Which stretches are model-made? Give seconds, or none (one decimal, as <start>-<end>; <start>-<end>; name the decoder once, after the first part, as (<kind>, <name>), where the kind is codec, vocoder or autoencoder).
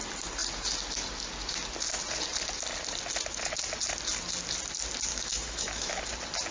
5.1-6.0 (autoencoder, DAC-VAE)